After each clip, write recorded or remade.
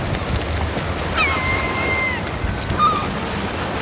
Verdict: recorded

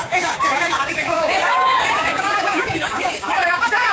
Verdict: remade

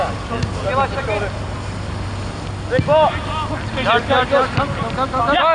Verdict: recorded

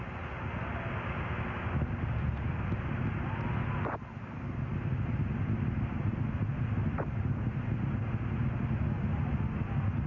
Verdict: recorded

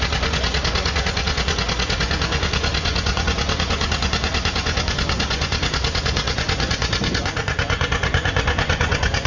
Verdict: remade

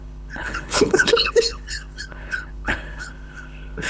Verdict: remade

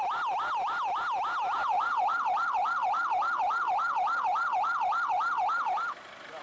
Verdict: recorded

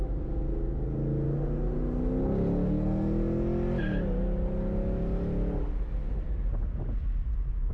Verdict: recorded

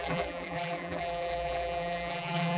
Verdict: remade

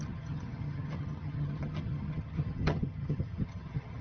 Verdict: remade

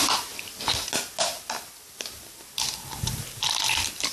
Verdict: recorded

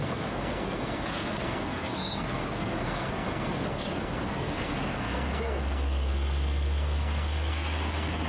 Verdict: remade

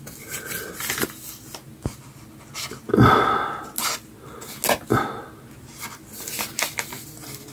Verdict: recorded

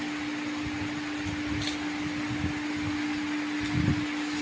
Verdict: recorded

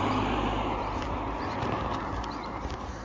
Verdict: recorded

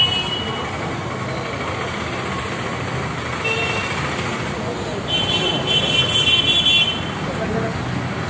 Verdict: recorded